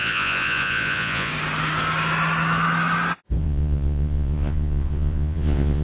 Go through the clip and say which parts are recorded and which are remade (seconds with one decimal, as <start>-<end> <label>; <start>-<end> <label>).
0.0-1.3 remade; 1.3-3.4 recorded; 3.4-5.8 remade